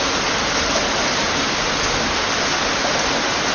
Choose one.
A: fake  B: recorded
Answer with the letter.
B